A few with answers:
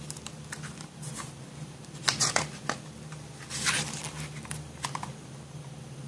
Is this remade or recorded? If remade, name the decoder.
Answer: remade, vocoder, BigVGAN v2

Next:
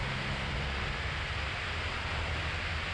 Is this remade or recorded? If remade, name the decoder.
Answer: recorded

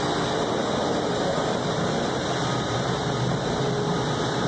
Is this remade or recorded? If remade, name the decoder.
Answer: recorded